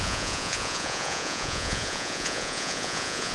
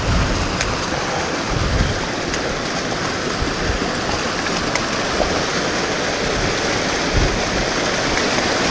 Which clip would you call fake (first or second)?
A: first